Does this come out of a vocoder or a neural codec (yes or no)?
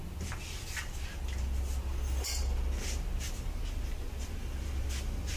no